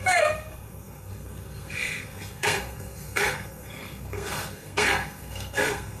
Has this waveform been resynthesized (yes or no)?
yes